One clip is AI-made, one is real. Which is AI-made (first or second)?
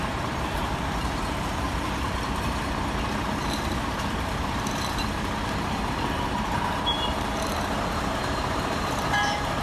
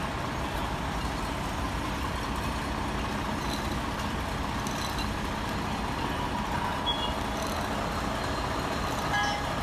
first